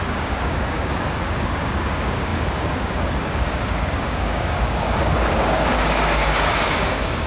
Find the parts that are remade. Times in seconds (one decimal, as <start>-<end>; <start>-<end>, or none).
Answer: 0.0-7.3